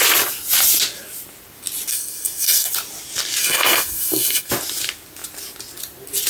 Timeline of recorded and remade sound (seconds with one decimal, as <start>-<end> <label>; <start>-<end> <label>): 0.0-1.9 recorded; 1.9-2.7 remade; 2.7-3.4 recorded; 3.4-4.5 remade; 4.5-6.3 recorded